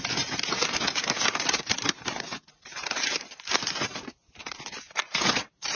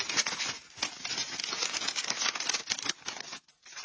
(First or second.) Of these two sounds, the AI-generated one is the first